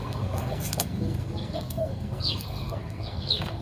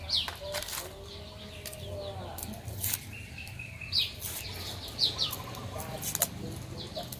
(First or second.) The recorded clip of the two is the second